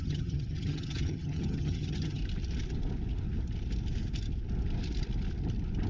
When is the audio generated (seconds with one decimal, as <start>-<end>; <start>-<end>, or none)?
0.0-2.2